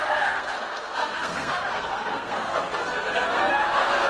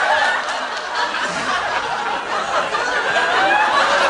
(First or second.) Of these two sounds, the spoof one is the first